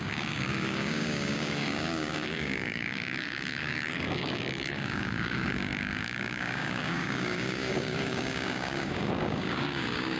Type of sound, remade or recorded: remade